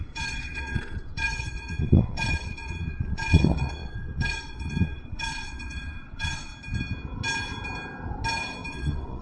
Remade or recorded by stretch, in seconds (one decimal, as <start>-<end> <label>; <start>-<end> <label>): 0.0-6.5 remade; 6.5-8.7 recorded; 8.7-9.2 remade